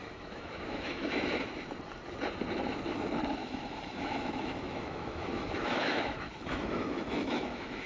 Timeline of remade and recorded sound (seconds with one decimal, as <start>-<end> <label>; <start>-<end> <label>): 0.0-1.2 remade; 1.2-3.4 recorded; 3.4-7.9 remade